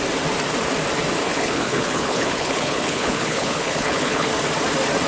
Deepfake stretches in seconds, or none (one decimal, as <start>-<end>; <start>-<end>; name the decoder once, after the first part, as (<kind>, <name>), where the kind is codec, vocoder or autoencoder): 1.2-4.3 (codec, HILCodec)